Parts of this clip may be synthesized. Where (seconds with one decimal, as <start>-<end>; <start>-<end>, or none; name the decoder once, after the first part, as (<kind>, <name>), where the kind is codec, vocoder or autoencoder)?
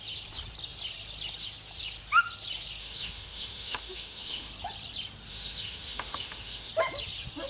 2.8-4.5 (autoencoder, DAC-VAE); 5.3-6.7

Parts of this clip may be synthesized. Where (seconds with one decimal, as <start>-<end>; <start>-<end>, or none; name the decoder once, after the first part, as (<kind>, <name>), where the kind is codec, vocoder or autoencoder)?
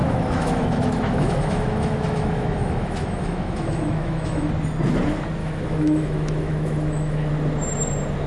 0.0-4.5 (autoencoder, DAC-VAE); 5.4-7.3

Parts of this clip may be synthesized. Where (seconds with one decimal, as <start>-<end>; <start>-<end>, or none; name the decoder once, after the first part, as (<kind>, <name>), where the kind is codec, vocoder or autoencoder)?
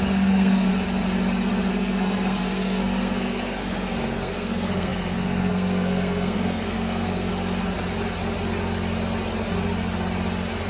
0.0-0.7 (codec, SNAC); 1.7-7.3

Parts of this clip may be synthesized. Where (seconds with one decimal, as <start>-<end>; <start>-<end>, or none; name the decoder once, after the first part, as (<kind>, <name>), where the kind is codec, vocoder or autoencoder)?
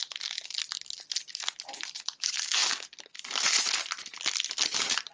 none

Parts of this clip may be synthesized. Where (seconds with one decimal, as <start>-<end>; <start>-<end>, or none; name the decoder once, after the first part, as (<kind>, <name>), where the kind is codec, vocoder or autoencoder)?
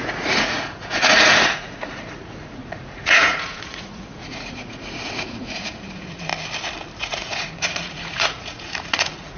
0.0-6.3 (vocoder, Vocos); 7.0-9.4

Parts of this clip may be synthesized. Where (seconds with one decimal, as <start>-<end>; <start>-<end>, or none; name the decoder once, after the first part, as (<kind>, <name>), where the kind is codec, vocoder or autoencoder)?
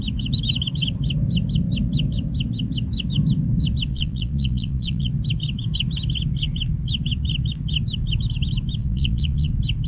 3.9-5.1 (vocoder, Vocos); 8.8-9.5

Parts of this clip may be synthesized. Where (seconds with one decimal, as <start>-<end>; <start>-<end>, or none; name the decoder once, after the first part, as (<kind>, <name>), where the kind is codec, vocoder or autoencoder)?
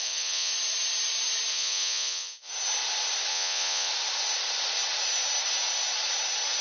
0.0-0.5 (vocoder, Vocos); 1.5-2.5; 3.3-3.9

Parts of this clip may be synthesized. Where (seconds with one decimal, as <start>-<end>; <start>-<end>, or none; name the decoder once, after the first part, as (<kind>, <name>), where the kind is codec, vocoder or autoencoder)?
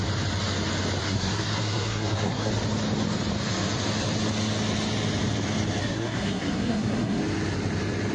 1.0-2.5 (codec, SNAC); 5.8-7.2